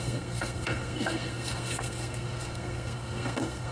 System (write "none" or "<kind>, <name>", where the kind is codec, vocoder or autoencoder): codec, SNAC